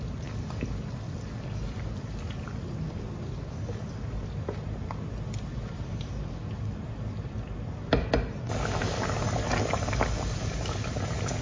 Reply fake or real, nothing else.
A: real